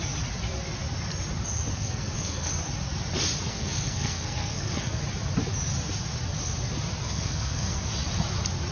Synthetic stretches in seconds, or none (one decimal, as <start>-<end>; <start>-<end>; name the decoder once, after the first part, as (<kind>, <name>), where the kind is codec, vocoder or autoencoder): 1.7-2.5 (codec, SNAC); 3.5-5.0; 7.0-7.9